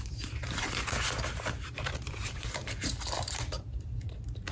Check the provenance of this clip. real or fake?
fake